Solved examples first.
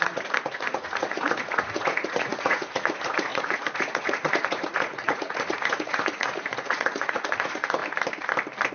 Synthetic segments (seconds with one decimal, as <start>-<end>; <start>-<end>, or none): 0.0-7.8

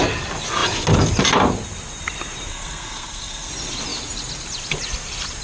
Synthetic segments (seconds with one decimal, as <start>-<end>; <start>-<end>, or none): 2.5-3.5

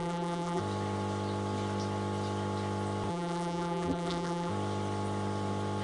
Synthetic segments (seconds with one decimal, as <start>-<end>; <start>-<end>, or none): 0.0-0.6; 3.1-4.5

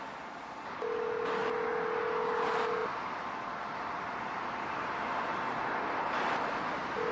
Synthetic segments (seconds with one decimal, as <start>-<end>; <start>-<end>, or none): none

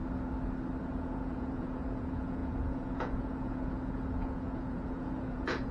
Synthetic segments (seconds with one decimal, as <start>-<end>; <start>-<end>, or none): 0.8-5.7